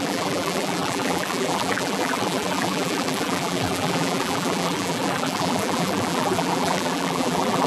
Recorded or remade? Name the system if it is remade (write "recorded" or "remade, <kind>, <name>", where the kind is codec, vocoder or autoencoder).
remade, vocoder, BigVGAN v2